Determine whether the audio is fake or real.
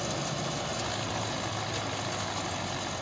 real